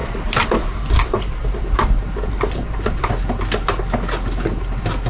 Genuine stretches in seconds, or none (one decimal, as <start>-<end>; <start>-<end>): 3.1-5.1